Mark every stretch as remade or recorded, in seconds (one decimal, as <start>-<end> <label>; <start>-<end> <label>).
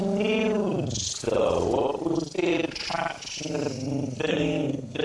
0.0-4.3 recorded; 4.3-5.0 remade